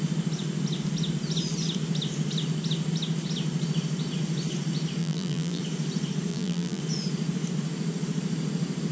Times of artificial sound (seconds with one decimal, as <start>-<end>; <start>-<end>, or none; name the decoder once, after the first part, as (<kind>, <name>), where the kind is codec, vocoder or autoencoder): 5.0-5.6 (vocoder, BigVGAN v2); 6.3-6.8